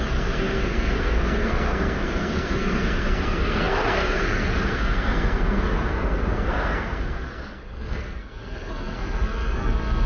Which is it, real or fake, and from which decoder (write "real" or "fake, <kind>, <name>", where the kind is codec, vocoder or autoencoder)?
fake, codec, SNAC